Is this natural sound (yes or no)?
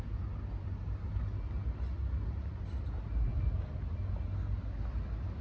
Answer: yes